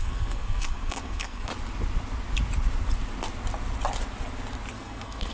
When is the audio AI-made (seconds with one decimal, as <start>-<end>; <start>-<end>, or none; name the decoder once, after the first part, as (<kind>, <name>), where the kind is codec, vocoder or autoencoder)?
0.0-1.5 (codec, SNAC); 4.7-5.3